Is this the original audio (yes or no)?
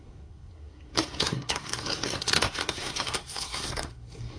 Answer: no